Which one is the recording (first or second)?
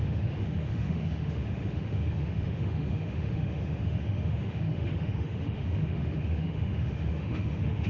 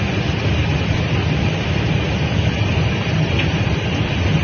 second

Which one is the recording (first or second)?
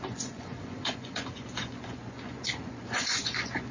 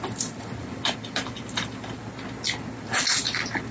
second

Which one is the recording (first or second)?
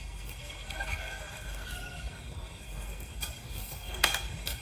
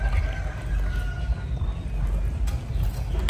second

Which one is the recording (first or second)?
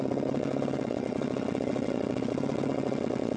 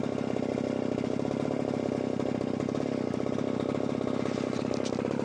second